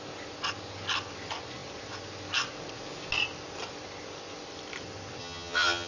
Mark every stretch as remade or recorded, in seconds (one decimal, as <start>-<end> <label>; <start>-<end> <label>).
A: 0.0-5.2 recorded; 5.2-5.9 remade